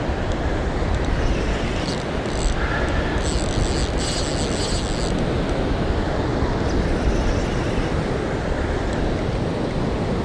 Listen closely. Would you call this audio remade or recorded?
recorded